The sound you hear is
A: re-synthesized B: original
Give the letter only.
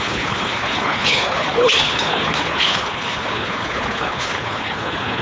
A